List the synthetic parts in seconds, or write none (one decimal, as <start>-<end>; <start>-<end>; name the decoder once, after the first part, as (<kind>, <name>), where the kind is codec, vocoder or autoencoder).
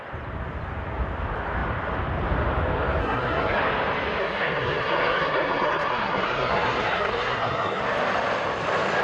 3.0-3.6 (codec, SNAC); 4.2-7.8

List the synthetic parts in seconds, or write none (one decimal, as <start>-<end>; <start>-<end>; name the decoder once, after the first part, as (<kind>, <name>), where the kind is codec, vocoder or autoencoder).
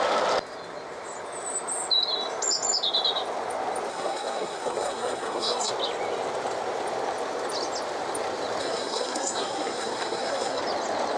3.9-5.7 (codec, SNAC); 8.6-10.6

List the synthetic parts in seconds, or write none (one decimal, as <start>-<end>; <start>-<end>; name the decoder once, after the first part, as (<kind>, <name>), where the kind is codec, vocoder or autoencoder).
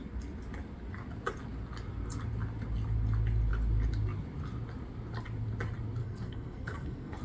6.0-7.2 (codec, SNAC)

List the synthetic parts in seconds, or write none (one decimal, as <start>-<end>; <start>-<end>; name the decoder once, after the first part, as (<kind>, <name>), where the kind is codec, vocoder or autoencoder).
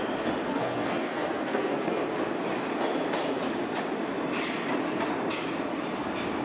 0.5-2.0 (codec, SNAC)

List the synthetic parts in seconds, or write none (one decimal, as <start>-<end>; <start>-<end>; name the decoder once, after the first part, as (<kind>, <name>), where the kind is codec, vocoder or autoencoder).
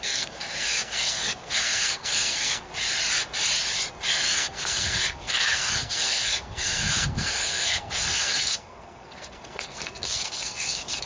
0.0-2.7 (codec, SNAC); 4.1-11.1